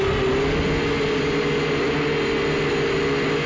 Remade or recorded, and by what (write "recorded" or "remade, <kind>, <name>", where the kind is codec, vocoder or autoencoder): recorded